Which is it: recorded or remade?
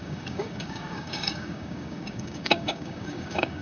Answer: remade